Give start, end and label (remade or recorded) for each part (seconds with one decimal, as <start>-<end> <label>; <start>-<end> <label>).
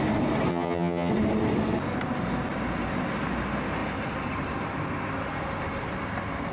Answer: 0.0-0.5 recorded; 0.5-1.1 remade; 1.1-6.5 recorded